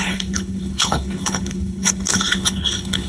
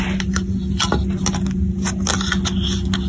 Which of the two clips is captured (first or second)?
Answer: second